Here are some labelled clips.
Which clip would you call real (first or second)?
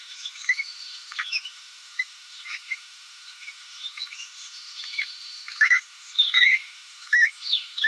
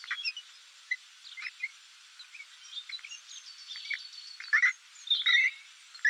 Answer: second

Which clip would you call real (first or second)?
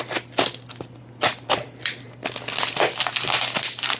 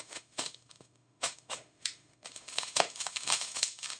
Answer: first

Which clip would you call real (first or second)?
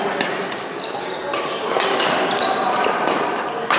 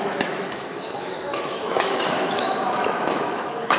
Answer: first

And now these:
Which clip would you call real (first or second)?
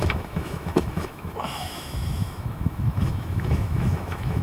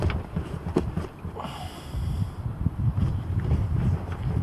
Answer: second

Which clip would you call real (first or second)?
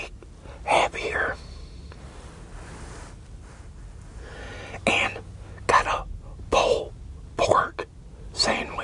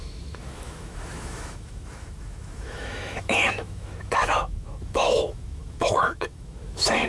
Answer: first